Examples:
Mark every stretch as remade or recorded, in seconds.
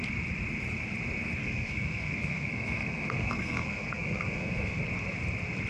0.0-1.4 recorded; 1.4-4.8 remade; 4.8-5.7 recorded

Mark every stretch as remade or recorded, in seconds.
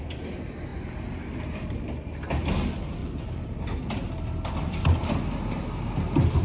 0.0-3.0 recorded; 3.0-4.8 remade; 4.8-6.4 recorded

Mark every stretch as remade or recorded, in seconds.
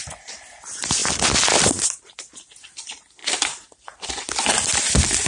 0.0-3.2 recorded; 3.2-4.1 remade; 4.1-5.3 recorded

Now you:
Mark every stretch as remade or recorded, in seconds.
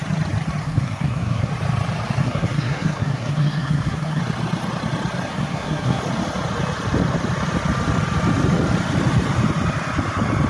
0.0-0.6 recorded; 0.6-1.5 remade; 1.5-2.2 recorded; 2.2-4.2 remade; 4.2-5.3 recorded; 5.3-6.0 remade; 6.0-10.5 recorded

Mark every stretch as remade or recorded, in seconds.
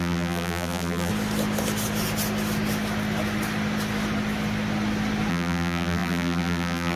0.0-1.1 remade; 1.1-5.3 recorded; 5.3-7.0 remade